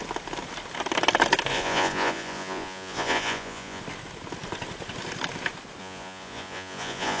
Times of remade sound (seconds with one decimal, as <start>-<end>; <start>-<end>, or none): 1.5-3.8; 5.8-7.2